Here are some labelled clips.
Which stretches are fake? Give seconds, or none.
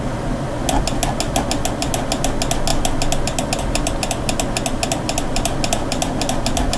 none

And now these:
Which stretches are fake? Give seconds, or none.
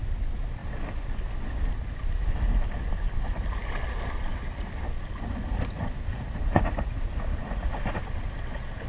6.1-7.8 (vocoder, Vocos)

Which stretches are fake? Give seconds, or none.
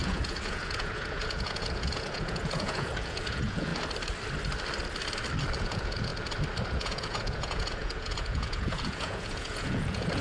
0.0-3.7 (vocoder, Vocos); 5.6-6.1; 6.7-10.2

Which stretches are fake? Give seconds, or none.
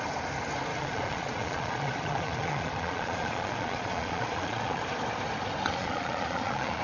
0.7-4.8 (vocoder, Vocos); 5.7-6.8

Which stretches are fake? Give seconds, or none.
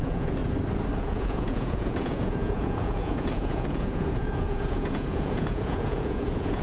0.0-0.4 (vocoder, Vocos); 1.0-6.6